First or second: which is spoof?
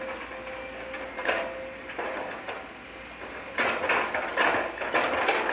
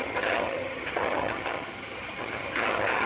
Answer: second